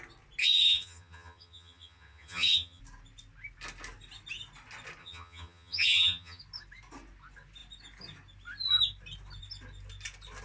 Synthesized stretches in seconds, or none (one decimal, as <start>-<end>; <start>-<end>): 0.4-2.8; 5.0-6.4